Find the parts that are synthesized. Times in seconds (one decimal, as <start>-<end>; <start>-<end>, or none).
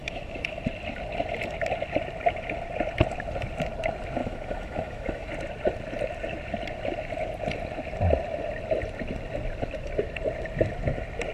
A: 0.0-0.6; 4.2-5.3